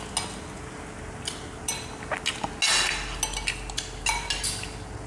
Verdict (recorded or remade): recorded